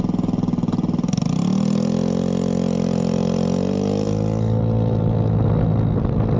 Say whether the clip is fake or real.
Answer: real